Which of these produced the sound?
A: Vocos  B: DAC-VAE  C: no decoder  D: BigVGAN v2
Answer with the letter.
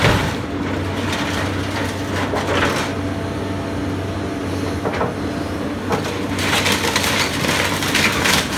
C